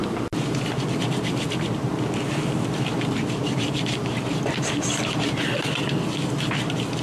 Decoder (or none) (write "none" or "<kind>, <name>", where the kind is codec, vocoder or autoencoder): none